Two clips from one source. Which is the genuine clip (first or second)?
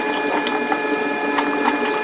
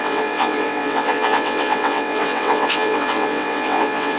first